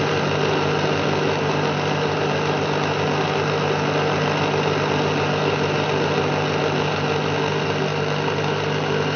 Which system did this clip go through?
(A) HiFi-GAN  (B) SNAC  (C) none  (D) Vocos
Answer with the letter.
C